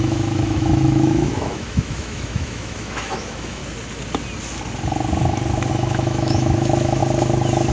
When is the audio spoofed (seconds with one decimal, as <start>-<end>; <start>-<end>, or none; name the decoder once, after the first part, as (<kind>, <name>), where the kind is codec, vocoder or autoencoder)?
0.0-3.6 (autoencoder, DAC-VAE); 5.7-7.0